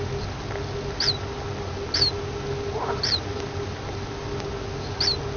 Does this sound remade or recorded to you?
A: recorded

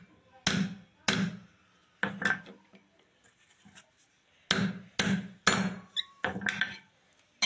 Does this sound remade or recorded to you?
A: recorded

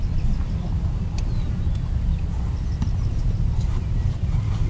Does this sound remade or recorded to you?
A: recorded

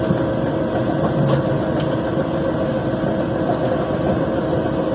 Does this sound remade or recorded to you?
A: recorded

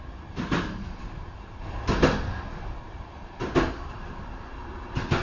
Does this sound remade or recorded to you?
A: recorded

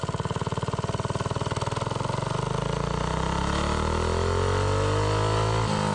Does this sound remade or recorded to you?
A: recorded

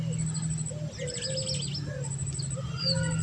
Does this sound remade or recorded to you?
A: recorded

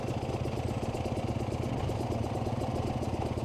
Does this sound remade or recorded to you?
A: recorded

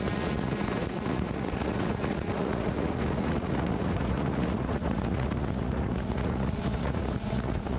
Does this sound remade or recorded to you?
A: remade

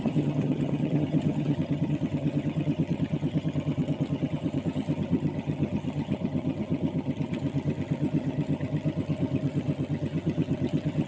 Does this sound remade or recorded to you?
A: remade